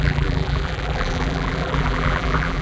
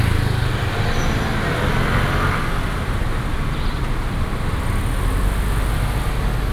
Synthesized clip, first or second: first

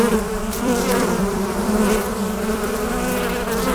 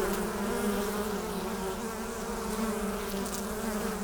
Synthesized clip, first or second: first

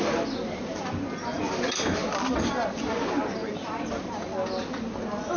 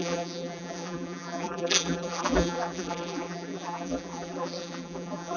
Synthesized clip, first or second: second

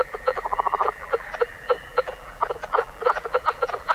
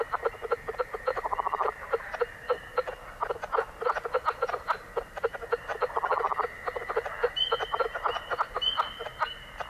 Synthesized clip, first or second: first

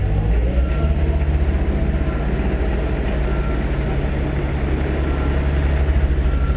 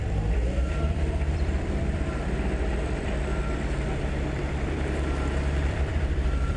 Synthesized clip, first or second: second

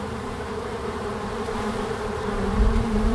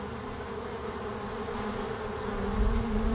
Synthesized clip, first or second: first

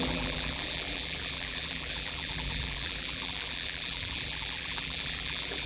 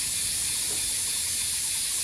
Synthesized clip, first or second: first